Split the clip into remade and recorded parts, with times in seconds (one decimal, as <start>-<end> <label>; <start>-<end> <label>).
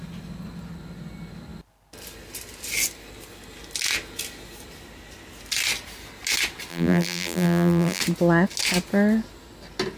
0.0-6.7 recorded; 6.7-8.0 remade; 8.0-10.0 recorded